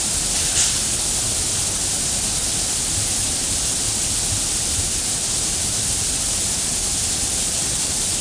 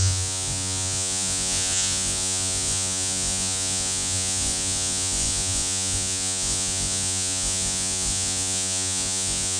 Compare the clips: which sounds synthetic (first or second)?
second